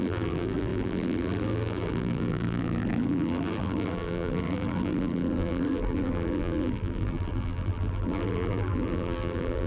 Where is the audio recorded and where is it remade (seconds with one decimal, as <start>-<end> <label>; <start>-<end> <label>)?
0.0-9.7 remade